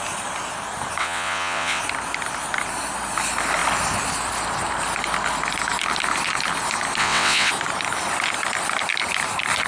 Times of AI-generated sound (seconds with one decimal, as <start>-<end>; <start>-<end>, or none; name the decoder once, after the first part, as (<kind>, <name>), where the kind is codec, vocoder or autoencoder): 1.0-1.8 (vocoder, WaveNeXt); 7.0-7.5